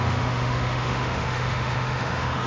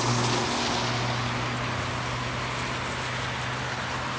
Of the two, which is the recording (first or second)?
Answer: second